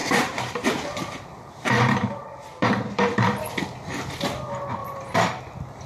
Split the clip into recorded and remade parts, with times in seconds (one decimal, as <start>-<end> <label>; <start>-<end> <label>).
0.0-3.5 remade; 3.5-4.8 recorded; 4.8-5.4 remade; 5.4-5.9 recorded